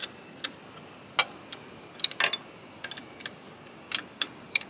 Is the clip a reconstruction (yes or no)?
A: no